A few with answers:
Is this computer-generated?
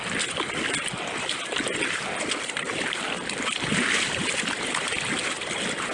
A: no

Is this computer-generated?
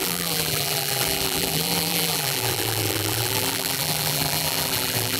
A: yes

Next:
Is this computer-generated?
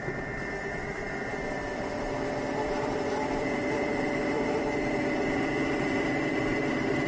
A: yes